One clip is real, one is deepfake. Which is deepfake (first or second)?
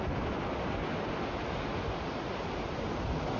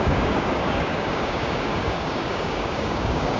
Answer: second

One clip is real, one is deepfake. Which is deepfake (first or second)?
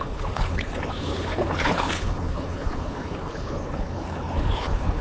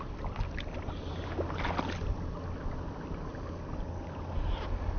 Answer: first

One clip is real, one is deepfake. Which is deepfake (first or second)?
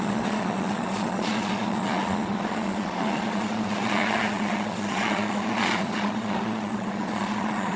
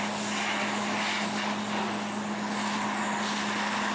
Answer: first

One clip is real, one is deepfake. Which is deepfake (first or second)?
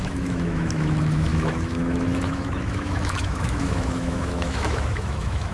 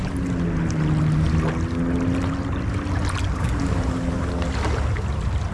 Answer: first